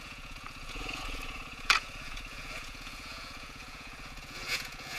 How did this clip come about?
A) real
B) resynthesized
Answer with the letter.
B